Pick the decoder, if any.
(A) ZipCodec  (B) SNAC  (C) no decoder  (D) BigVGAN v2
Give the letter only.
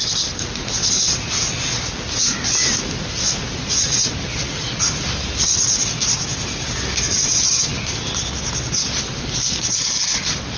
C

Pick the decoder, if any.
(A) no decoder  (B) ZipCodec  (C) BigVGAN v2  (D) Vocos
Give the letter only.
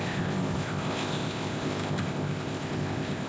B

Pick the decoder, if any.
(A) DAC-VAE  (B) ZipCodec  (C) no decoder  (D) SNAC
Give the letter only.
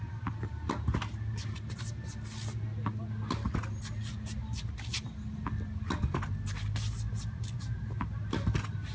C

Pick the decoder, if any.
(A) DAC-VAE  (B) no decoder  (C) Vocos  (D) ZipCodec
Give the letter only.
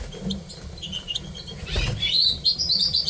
B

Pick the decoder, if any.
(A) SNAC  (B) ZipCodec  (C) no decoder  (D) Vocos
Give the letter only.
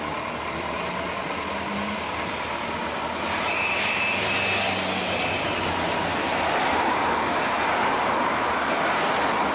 C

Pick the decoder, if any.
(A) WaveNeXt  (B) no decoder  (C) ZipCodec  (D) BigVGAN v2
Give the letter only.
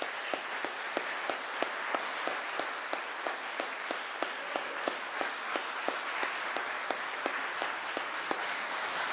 B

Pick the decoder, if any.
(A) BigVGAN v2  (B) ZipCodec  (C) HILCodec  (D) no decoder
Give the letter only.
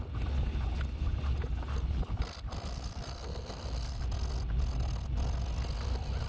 D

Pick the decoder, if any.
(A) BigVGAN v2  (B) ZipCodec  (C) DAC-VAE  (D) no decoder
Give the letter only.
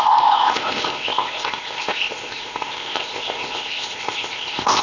B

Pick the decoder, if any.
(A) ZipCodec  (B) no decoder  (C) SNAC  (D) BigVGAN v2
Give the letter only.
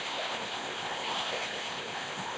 A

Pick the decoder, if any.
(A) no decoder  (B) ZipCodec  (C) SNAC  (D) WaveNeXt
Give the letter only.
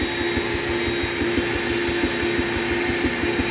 A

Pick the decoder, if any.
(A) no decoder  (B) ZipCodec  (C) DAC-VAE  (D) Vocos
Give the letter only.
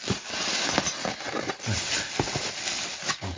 A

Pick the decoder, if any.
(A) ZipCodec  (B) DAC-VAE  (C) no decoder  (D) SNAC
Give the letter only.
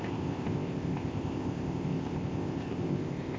A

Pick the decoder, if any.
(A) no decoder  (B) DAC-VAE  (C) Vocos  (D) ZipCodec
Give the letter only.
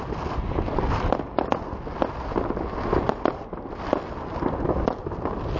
A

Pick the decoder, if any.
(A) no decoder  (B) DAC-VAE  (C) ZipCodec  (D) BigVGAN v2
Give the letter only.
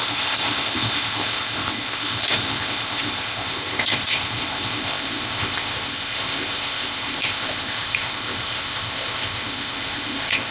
C